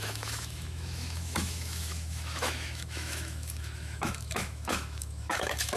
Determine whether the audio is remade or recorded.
remade